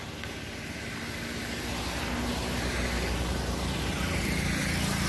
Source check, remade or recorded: recorded